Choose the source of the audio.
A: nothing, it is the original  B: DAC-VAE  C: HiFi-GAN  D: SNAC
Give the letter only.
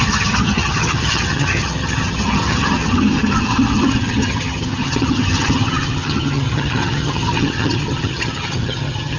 C